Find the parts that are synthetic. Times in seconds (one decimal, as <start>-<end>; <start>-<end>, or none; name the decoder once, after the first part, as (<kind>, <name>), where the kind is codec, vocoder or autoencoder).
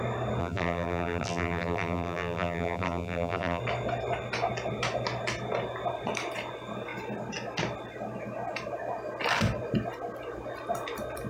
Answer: 0.4-3.6 (vocoder, BigVGAN v2)